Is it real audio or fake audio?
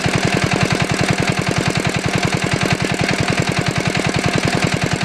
real